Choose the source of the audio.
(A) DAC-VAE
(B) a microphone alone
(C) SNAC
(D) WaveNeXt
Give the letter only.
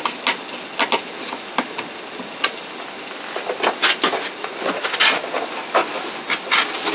B